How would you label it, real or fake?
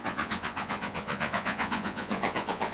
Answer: fake